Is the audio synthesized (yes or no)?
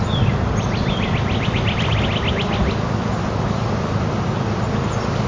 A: no